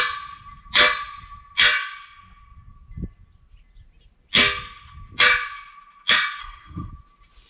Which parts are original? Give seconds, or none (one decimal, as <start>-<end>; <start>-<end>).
0.0-6.4; 6.9-7.5